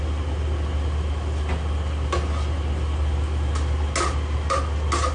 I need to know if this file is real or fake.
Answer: real